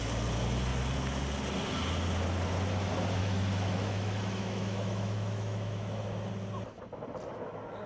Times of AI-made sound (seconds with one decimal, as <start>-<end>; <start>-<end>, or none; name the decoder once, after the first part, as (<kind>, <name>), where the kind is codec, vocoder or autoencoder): 3.2-6.3 (autoencoder, DAC-VAE)